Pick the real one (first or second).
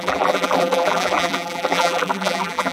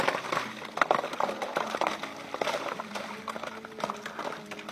second